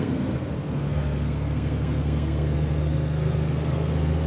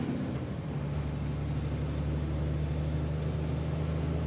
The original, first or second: second